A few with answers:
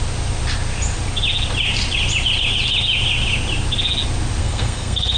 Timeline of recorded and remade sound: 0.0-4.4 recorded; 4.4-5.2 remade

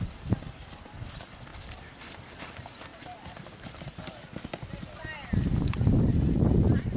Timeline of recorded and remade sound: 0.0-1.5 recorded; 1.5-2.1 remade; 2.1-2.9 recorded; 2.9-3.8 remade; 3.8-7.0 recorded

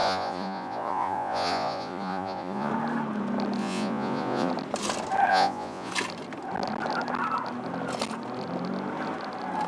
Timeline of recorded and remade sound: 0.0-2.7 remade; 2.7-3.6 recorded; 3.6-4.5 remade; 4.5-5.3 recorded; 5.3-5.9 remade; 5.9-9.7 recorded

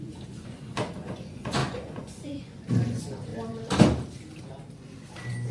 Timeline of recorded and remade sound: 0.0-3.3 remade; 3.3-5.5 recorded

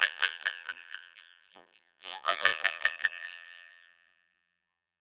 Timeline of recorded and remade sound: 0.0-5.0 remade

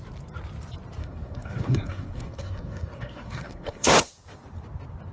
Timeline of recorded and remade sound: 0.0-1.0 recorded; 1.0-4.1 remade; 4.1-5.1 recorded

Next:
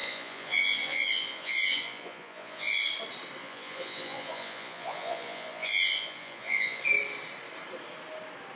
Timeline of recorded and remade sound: 0.0-2.9 remade; 2.9-3.4 recorded; 3.4-6.8 remade; 6.8-8.6 recorded

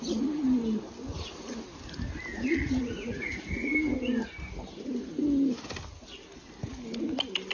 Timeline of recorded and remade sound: 0.0-2.5 recorded; 2.5-3.5 remade; 3.5-7.5 recorded